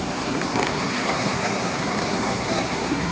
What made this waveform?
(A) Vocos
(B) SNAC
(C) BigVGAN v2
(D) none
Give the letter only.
B